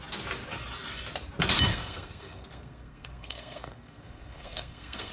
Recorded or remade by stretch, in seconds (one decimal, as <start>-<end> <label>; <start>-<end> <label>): 0.0-1.7 recorded; 1.7-5.1 remade